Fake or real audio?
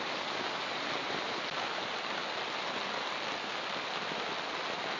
real